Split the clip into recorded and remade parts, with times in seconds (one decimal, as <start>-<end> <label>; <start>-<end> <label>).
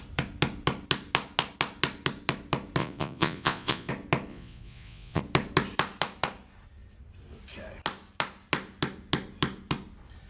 0.0-2.8 recorded; 2.8-3.9 remade; 3.9-4.3 recorded; 4.3-5.2 remade; 5.2-10.3 recorded